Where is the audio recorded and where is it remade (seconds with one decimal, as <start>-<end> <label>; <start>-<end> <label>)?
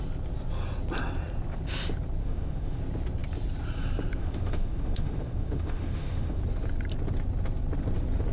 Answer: 0.0-2.2 recorded; 2.2-2.8 remade; 2.8-4.2 recorded; 4.2-6.4 remade; 6.4-8.3 recorded